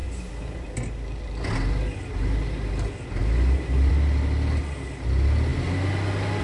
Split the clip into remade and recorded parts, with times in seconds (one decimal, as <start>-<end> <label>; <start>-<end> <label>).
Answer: 0.0-6.4 recorded